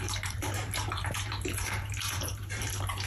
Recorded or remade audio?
remade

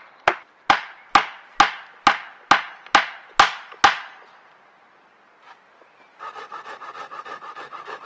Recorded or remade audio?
recorded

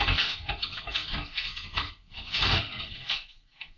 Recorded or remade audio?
remade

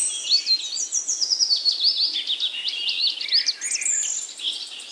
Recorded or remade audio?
recorded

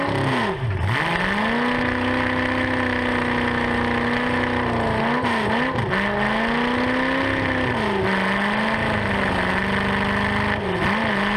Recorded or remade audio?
recorded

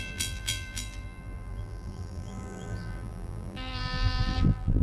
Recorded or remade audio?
remade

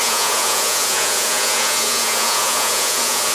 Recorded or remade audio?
remade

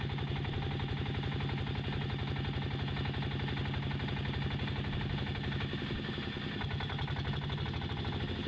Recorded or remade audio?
recorded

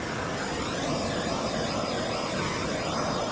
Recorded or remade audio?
recorded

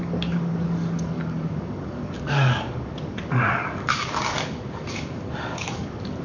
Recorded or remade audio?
remade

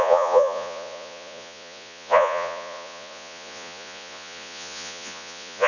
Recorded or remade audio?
remade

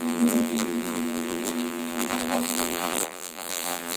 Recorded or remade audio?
remade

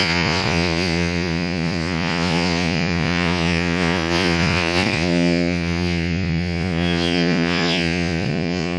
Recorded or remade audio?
remade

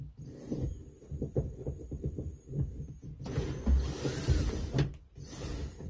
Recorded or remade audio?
recorded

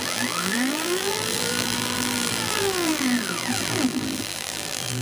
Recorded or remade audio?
remade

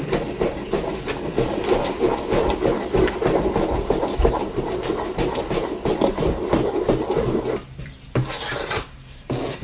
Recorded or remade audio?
recorded